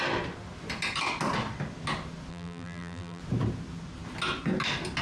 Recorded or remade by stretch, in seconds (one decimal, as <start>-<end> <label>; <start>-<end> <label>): 0.0-2.3 recorded; 2.3-3.2 remade; 3.2-5.0 recorded